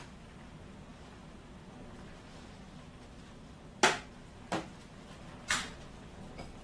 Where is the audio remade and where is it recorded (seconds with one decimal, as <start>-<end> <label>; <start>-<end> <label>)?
0.0-6.6 recorded

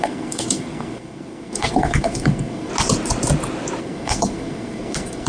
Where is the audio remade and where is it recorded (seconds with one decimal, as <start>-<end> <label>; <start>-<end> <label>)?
0.0-2.7 remade; 2.7-3.8 recorded; 3.8-5.3 remade